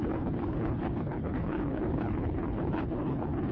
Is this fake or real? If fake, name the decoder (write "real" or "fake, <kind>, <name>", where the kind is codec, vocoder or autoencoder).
fake, codec, HILCodec